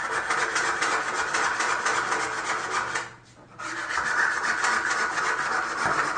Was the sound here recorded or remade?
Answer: recorded